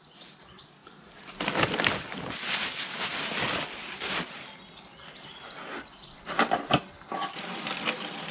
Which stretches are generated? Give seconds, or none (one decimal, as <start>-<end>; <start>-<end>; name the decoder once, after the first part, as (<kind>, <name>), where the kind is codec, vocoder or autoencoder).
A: none